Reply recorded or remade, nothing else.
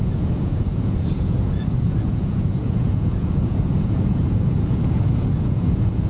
remade